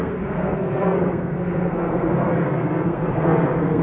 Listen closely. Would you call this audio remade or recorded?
remade